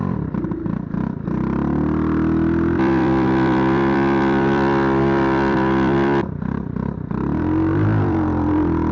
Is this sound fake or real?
fake